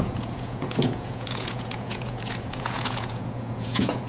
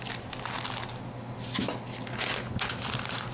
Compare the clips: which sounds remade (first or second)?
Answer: first